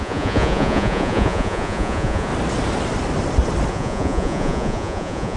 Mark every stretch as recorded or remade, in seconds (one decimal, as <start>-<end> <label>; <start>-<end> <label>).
0.0-2.3 remade; 2.3-3.7 recorded; 3.7-5.4 remade